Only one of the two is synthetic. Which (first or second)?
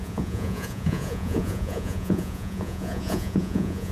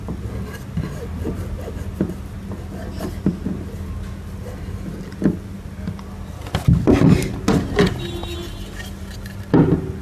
first